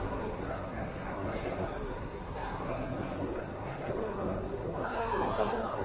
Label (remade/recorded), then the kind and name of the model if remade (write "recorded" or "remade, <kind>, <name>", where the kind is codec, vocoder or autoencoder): remade, codec, SNAC